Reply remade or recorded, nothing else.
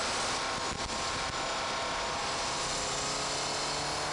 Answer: recorded